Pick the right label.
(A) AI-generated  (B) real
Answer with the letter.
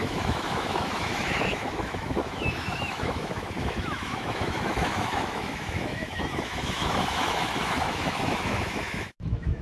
A